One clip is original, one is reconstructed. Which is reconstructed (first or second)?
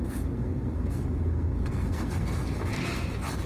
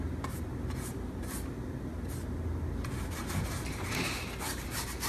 first